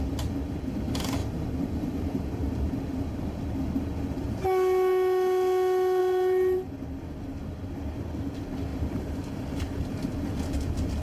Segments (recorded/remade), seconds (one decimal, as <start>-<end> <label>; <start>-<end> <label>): 0.0-1.2 recorded; 1.2-2.5 remade; 2.5-6.0 recorded; 6.0-6.7 remade; 6.7-8.7 recorded; 8.7-9.9 remade; 9.9-11.0 recorded